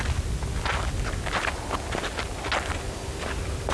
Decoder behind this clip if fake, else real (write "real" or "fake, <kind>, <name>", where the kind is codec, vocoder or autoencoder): real